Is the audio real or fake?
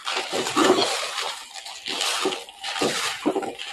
real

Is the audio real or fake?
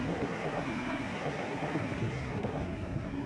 fake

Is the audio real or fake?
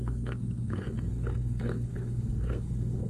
fake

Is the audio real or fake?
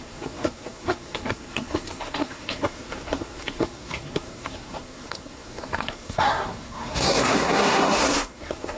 fake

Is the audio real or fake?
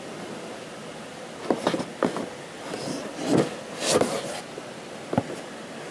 real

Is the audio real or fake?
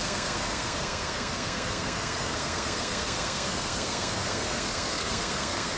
fake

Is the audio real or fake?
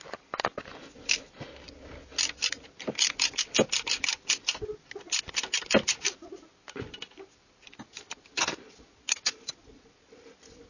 real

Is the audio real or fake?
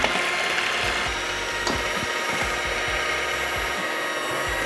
real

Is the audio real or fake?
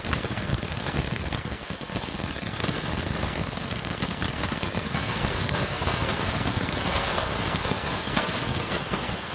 fake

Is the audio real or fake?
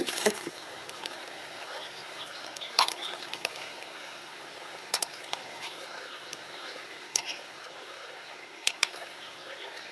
fake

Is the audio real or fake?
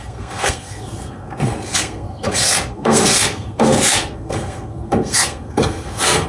fake